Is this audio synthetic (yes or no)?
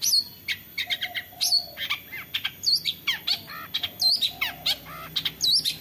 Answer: no